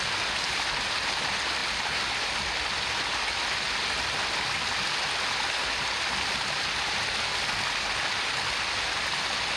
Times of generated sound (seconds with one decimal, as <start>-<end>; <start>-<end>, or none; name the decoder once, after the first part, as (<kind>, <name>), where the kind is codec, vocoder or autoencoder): none